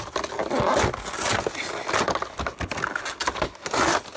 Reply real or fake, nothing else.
real